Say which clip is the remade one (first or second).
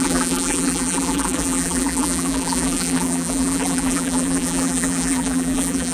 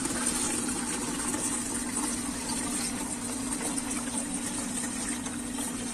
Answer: first